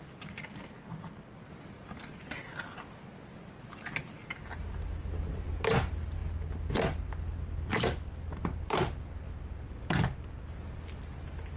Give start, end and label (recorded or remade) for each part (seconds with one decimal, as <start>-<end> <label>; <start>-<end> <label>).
0.0-11.6 recorded